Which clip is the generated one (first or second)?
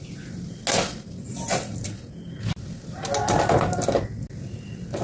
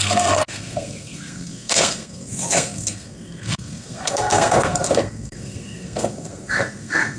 second